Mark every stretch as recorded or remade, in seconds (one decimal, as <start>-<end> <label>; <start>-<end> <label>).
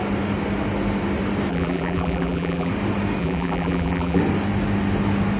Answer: 0.0-1.5 recorded; 1.5-2.7 remade; 2.7-3.2 recorded; 3.2-4.2 remade; 4.2-5.4 recorded